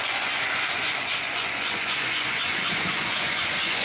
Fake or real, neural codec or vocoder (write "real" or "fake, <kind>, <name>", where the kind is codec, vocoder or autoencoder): fake, vocoder, Vocos